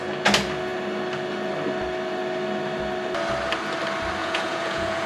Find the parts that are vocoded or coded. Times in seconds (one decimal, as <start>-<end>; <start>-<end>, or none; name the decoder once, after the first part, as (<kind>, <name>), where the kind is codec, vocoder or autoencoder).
4.2-5.1 (vocoder, Vocos)